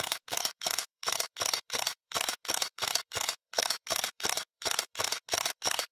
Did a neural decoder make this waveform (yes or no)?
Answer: yes